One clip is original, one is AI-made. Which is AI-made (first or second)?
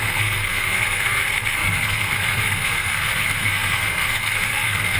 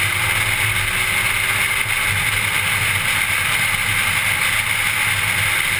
first